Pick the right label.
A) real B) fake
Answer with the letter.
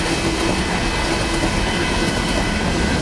A